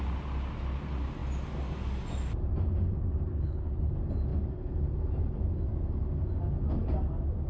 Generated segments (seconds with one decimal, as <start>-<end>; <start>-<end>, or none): 3.3-3.9